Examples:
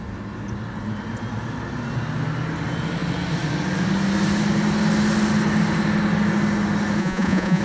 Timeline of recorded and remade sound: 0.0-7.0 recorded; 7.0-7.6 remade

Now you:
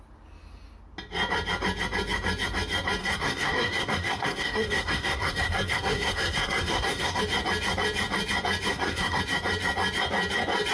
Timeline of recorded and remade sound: 0.0-3.0 recorded; 3.0-7.2 remade; 7.2-8.7 recorded; 8.7-9.2 remade; 9.2-10.7 recorded